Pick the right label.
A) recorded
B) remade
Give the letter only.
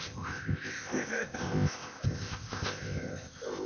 B